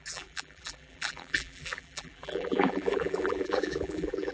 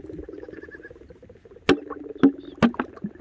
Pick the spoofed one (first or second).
first